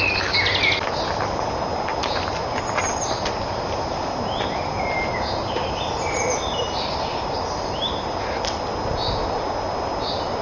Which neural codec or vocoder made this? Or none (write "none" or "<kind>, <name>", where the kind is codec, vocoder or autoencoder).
none